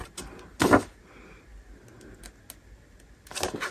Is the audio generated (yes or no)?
no